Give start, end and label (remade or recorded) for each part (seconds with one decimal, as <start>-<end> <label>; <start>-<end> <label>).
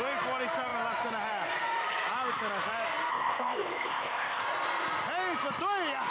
0.0-3.1 recorded; 3.1-4.4 remade; 4.4-6.1 recorded